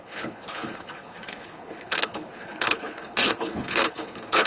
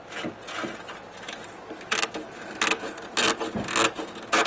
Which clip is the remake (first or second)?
first